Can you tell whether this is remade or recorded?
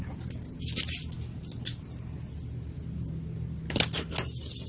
recorded